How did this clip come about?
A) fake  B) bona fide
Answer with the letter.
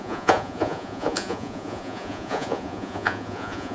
A